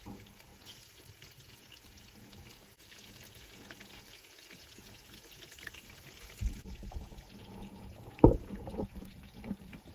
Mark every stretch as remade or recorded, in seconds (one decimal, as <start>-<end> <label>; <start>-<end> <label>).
0.0-9.9 remade